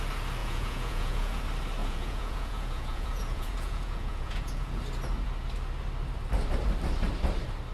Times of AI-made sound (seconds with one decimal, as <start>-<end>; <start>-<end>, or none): 0.4-1.4; 1.8-4.8

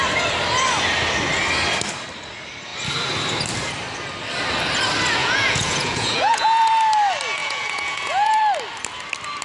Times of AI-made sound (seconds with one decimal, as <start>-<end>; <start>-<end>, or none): 5.2-6.7; 7.4-8.4

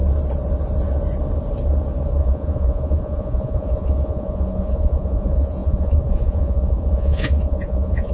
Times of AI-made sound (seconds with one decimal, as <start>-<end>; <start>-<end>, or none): 2.2-8.1

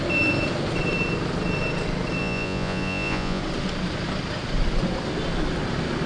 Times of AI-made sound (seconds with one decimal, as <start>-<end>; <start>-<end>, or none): 2.2-3.4

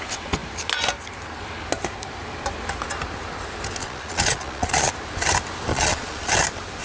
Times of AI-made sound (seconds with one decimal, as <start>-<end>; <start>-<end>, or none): 3.8-4.9; 5.7-6.3

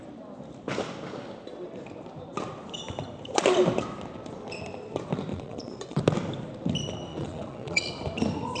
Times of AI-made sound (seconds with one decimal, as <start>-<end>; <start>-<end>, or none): 5.3-6.0; 7.1-7.9